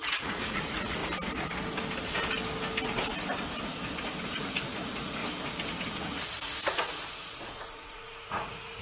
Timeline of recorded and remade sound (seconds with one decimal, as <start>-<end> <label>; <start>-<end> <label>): 0.0-1.0 remade; 1.0-4.3 recorded; 4.3-5.2 remade; 5.2-5.9 recorded; 5.9-8.8 remade